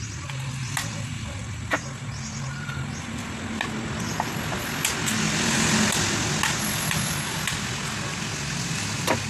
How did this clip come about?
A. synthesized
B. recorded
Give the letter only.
B